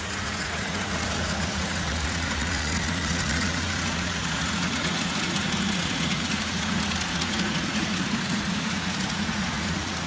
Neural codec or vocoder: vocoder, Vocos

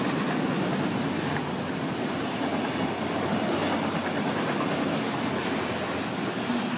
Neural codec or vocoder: none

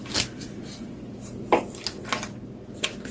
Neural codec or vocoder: none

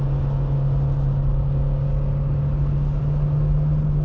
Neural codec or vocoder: none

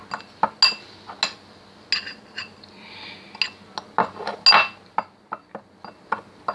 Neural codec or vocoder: none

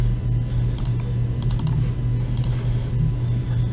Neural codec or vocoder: none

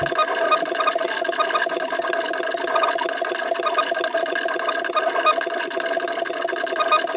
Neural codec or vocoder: none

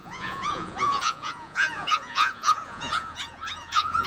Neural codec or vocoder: vocoder, Vocos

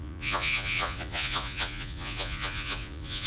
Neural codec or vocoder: vocoder, Vocos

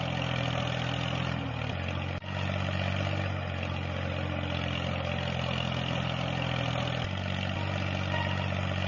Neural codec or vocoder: none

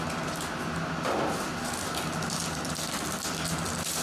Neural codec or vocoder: none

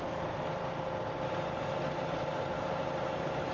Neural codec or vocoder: none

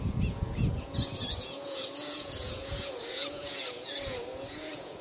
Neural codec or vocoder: vocoder, Vocos